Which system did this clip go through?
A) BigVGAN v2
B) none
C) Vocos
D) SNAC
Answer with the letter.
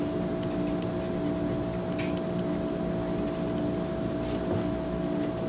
B